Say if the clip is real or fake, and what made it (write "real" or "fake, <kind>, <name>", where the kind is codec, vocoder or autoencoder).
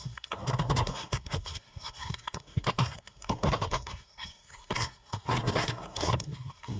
fake, codec, SNAC